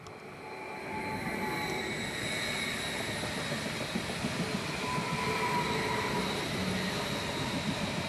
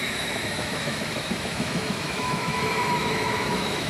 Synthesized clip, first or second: second